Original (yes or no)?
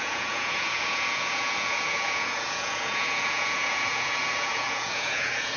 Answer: no